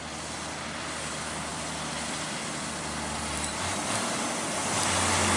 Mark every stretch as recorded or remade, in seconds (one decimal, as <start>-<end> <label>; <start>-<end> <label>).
0.0-1.5 recorded; 1.5-4.2 remade; 4.2-5.4 recorded